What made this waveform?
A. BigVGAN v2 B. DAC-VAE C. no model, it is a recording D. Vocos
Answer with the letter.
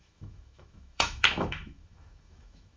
B